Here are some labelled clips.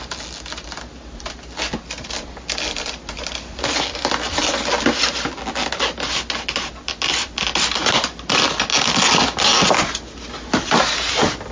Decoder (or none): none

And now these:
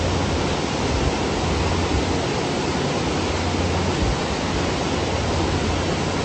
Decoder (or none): none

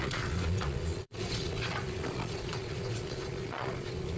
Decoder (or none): vocoder, Vocos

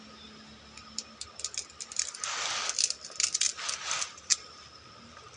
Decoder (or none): none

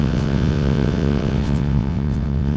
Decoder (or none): vocoder, WaveNeXt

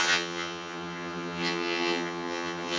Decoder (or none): vocoder, HiFi-GAN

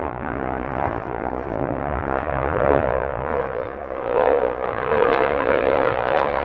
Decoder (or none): vocoder, Vocos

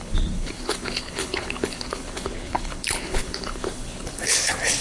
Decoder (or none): codec, HILCodec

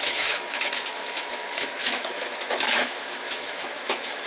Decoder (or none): autoencoder, DAC-VAE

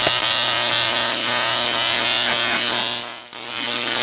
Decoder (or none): none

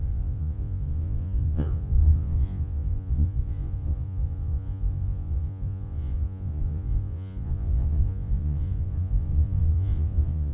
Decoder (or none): vocoder, Vocos